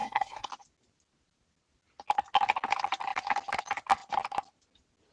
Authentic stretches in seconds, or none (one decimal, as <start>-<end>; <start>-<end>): 0.5-5.1